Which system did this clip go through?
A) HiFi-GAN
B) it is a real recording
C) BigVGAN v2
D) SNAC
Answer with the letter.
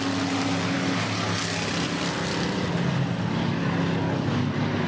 B